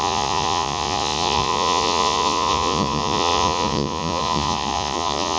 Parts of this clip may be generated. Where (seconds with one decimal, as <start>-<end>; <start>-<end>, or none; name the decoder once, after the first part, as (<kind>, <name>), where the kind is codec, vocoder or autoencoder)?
0.0-5.4 (vocoder, Vocos)